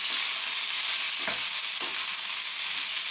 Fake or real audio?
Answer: real